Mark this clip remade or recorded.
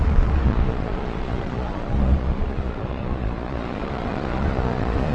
remade